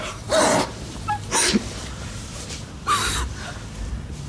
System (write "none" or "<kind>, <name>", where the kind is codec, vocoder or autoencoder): vocoder, BigVGAN v2